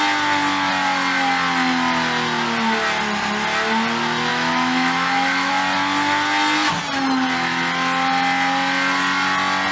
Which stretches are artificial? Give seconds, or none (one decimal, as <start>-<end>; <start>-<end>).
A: 4.3-5.5